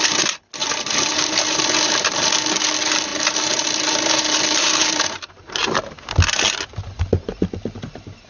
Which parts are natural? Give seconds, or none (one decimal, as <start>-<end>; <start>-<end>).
0.0-0.6; 2.3-3.1; 5.8-8.3